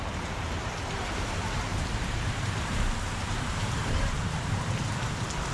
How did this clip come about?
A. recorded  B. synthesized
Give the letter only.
B